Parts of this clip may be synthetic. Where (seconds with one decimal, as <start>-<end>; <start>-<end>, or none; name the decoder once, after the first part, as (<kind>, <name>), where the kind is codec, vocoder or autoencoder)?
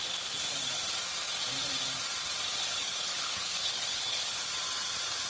2.7-4.4 (codec, HILCodec)